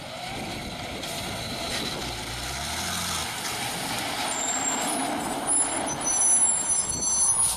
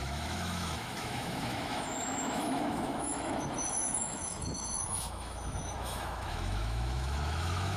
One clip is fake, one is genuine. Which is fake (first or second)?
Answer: second